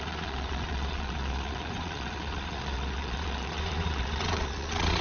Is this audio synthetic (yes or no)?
yes